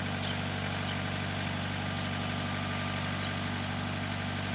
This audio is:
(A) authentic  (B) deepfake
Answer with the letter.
A